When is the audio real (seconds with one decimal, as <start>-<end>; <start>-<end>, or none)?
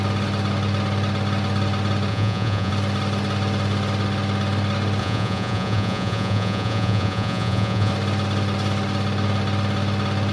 0.0-2.1; 2.7-5.0; 7.9-10.3